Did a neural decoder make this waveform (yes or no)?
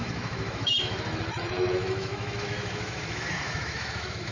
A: yes